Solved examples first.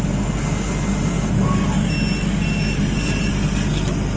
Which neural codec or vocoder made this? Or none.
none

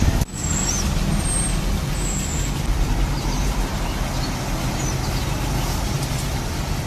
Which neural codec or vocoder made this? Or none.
none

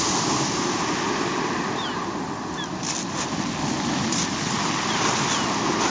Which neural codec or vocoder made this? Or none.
none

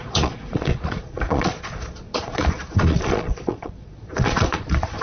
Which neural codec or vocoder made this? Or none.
vocoder, Vocos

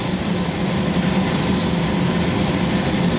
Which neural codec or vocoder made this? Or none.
none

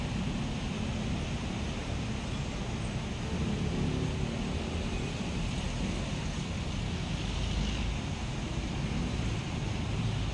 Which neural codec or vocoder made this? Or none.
none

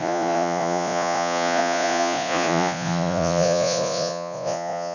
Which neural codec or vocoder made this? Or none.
vocoder, Vocos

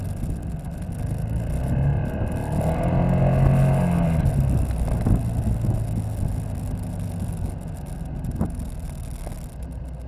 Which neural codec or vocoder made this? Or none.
none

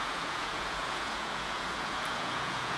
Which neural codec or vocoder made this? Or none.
vocoder, Vocos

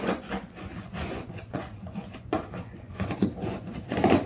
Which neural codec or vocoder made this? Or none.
vocoder, Vocos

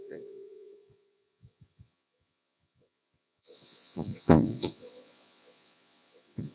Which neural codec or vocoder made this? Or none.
vocoder, Vocos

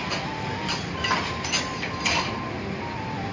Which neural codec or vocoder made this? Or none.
none